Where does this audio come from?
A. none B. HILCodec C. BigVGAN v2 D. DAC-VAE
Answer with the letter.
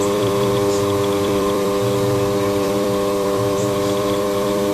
C